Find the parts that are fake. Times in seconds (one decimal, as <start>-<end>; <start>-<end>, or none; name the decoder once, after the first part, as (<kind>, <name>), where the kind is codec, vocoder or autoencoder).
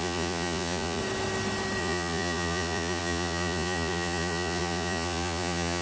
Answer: 0.0-1.0 (vocoder, Vocos); 1.8-5.8